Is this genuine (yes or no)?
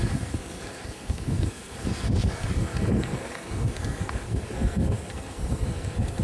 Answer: no